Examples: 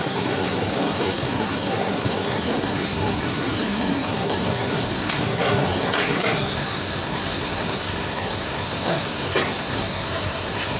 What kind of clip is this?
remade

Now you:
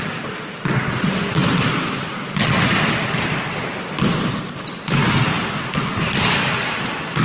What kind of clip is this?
recorded